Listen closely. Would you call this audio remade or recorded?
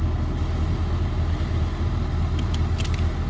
recorded